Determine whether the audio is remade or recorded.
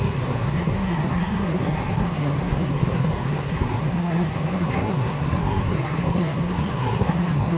remade